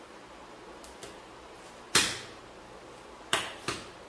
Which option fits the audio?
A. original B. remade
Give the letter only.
A